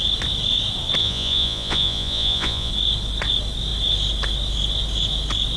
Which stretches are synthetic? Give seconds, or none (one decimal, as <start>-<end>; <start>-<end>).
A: 1.0-2.7